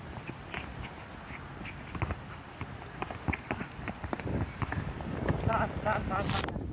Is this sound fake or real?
fake